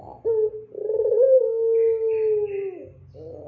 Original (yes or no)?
yes